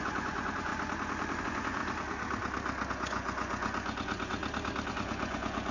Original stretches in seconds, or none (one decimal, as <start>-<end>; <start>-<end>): 0.7-1.4; 1.8-2.9; 4.4-4.9